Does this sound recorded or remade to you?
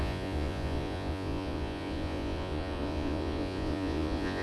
remade